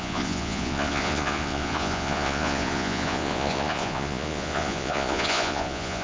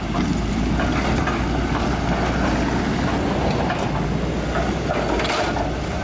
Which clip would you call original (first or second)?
second